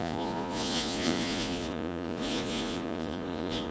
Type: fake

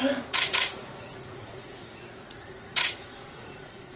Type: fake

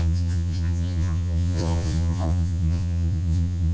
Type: fake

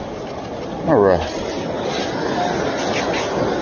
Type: real